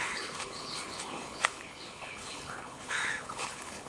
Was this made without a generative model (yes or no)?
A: no